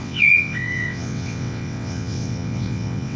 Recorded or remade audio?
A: remade